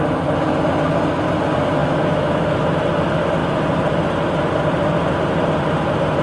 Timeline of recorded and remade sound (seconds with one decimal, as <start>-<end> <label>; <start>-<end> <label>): 0.0-1.8 recorded; 1.8-2.6 remade; 2.6-6.2 recorded